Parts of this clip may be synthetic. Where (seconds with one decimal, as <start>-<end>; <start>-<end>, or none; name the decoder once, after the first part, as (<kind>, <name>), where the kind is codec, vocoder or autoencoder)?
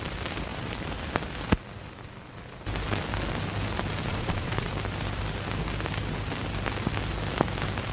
4.1-4.7 (vocoder, Vocos)